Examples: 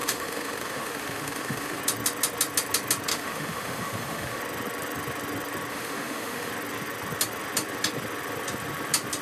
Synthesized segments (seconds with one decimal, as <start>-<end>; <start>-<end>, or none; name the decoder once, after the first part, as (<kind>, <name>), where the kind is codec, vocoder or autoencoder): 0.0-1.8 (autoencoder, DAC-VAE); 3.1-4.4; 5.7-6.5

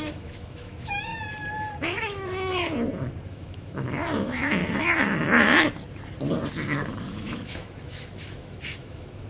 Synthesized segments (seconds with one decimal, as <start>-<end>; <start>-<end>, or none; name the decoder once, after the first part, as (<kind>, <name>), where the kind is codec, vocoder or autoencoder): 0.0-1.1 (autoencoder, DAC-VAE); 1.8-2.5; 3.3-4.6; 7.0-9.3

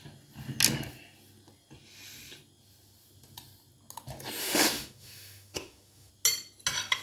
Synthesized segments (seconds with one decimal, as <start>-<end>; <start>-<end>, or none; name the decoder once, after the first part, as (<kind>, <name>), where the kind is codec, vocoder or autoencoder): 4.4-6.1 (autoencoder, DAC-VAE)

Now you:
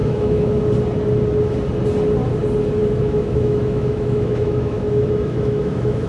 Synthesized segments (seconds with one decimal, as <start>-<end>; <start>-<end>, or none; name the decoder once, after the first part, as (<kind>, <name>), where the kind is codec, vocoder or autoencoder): 0.0-0.6 (autoencoder, DAC-VAE); 2.8-6.1